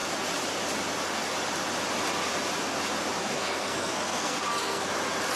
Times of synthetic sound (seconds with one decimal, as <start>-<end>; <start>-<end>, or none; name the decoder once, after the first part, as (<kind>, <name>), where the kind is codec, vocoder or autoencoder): 3.2-4.9 (codec, SNAC)